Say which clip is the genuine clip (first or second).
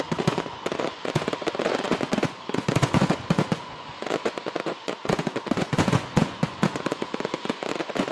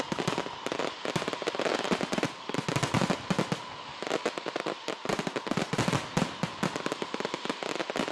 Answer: second